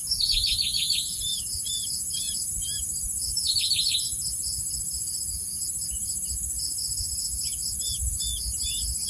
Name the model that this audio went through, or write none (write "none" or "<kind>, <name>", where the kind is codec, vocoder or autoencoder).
vocoder, Vocos